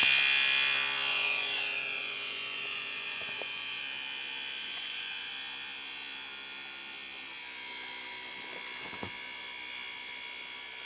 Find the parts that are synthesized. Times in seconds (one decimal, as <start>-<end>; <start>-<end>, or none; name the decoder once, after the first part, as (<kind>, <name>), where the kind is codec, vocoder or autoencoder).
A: 1.1-3.8 (vocoder, Vocos); 4.6-5.3